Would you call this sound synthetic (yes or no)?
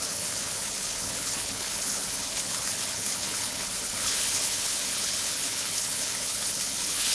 yes